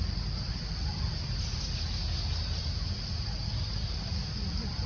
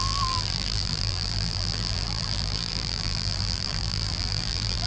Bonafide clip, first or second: first